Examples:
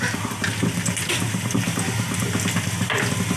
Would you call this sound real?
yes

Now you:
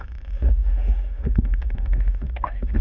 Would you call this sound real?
no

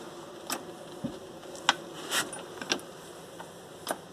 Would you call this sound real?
yes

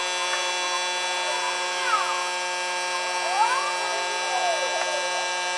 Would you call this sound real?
yes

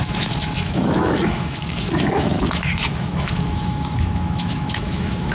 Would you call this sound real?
no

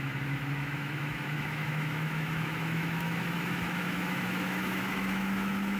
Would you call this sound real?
no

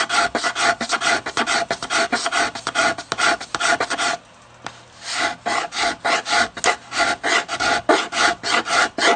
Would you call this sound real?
yes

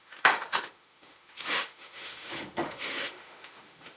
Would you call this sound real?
no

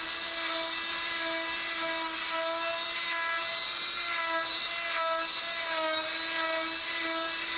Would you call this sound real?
yes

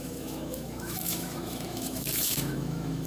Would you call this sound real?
no